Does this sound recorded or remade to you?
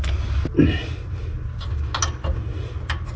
recorded